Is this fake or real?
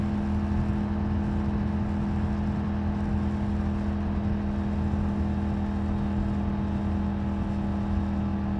real